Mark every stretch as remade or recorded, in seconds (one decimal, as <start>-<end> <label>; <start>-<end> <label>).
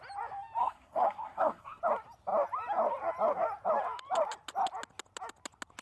0.0-0.6 recorded; 0.6-1.8 remade; 1.8-5.8 recorded